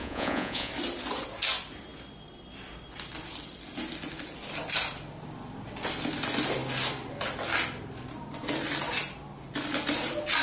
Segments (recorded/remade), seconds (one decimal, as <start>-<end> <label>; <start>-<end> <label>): 0.0-0.7 remade; 0.7-10.4 recorded